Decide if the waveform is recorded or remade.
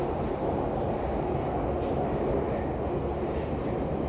recorded